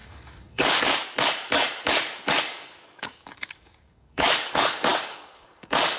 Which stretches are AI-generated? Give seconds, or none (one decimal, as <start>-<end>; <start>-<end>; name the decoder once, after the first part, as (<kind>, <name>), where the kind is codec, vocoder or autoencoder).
0.0-6.0 (codec, DAC)